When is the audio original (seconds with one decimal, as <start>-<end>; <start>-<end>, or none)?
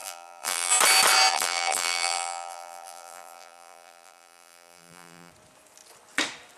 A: 0.7-1.3; 5.3-6.6